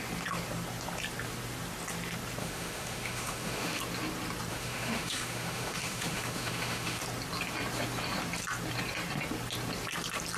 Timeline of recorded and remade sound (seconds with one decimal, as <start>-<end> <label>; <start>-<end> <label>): 0.0-2.4 recorded; 2.4-3.8 remade; 3.8-4.5 recorded; 4.5-7.0 remade; 7.0-10.4 recorded